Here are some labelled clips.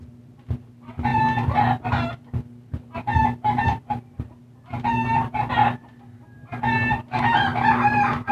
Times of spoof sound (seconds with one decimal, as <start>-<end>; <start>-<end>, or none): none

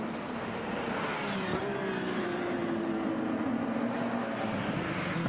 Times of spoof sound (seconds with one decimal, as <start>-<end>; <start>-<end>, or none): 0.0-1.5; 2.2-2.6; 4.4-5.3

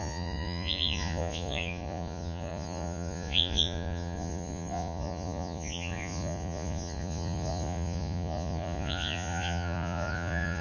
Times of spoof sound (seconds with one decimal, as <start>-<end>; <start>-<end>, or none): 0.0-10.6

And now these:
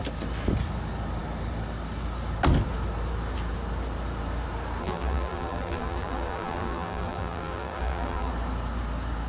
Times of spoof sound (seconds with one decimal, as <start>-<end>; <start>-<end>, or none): 4.8-8.3

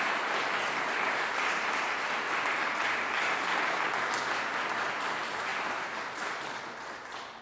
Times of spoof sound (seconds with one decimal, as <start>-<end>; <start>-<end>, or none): none

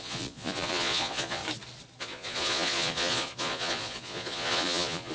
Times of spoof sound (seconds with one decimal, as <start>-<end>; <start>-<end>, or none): 0.0-1.4; 2.0-5.1